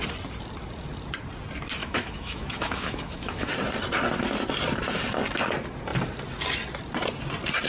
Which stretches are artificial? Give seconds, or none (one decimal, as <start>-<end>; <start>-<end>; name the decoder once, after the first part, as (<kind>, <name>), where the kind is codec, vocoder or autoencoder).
1.8-3.5 (autoencoder, DAC-VAE)